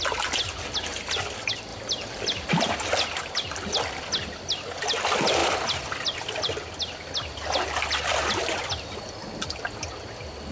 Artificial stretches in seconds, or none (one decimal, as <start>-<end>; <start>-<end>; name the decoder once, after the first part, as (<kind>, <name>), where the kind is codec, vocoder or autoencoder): 1.7-2.5 (vocoder, BigVGAN v2)